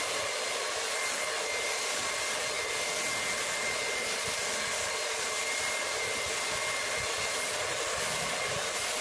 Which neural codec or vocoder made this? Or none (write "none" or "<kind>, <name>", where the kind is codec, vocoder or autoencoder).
none